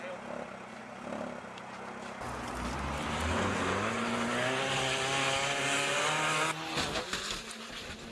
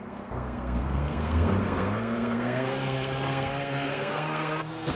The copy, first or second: second